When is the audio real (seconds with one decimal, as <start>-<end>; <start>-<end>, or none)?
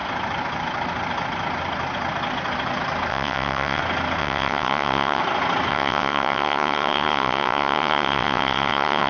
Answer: 0.0-3.1; 3.8-4.2; 5.2-5.7